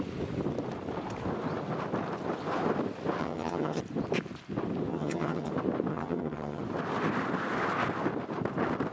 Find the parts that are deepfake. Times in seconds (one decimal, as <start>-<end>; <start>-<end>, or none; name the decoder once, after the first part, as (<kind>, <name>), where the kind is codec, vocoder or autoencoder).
3.2-3.8 (vocoder, HiFi-GAN); 4.9-5.5; 5.9-6.6